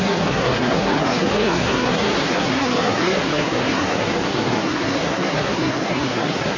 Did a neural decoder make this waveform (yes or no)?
yes